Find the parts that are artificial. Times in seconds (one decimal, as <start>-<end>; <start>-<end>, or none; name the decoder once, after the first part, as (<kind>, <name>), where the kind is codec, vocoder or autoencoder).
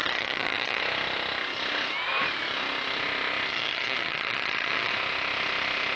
0.0-0.8 (vocoder, HiFi-GAN); 3.5-4.9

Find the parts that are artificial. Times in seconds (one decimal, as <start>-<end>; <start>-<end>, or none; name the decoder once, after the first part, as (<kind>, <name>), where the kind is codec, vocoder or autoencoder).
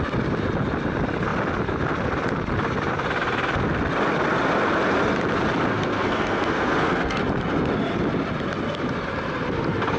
5.7-7.2 (codec, SNAC)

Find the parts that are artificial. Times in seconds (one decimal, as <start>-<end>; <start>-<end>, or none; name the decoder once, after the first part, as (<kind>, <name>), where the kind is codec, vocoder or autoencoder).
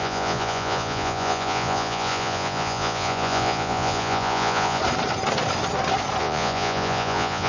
0.0-4.8 (vocoder, Vocos); 6.2-7.5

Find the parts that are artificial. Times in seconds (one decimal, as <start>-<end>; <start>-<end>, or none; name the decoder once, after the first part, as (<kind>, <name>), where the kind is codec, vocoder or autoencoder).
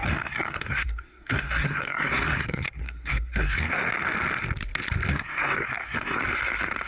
0.0-3.9 (codec, SNAC); 5.1-6.2